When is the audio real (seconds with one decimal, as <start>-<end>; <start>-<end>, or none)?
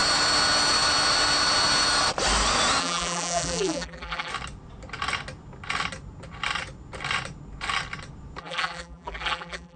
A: 0.0-2.8; 4.3-8.4